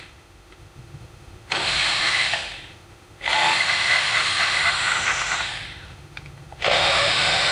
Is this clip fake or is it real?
fake